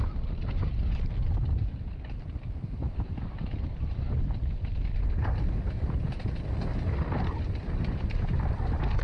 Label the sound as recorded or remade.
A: remade